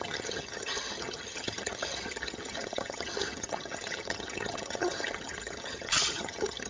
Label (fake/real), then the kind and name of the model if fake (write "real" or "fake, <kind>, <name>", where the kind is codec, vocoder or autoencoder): fake, vocoder, HiFi-GAN